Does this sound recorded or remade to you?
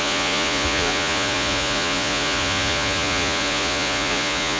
remade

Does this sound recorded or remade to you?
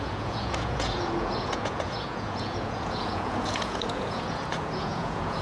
remade